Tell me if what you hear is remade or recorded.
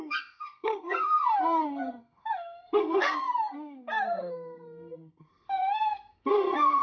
remade